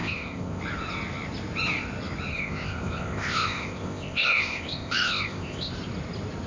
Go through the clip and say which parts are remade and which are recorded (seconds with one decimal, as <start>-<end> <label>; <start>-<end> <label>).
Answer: 0.0-0.6 remade; 0.6-2.3 recorded; 2.3-5.7 remade; 5.7-6.5 recorded